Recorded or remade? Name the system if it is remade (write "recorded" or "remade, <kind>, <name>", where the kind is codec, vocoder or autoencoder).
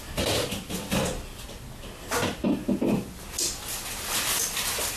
recorded